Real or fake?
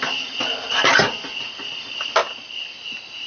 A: real